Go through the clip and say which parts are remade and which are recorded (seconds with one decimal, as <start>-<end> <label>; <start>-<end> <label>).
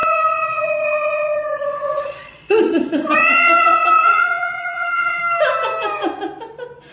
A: 0.0-5.2 remade; 5.2-6.9 recorded